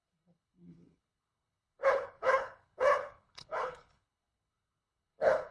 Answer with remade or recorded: remade